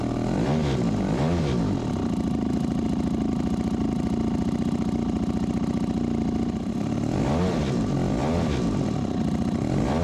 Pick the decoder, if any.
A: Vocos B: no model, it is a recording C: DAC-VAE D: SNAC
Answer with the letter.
B